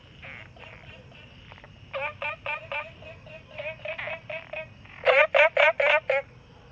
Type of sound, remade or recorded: recorded